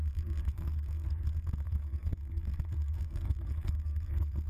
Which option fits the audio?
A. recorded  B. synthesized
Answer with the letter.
B